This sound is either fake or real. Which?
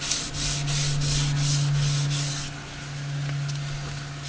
real